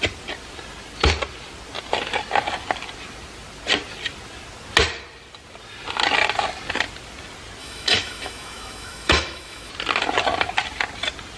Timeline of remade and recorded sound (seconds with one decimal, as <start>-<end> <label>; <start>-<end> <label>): 0.0-7.6 recorded; 7.6-9.7 remade; 9.7-11.4 recorded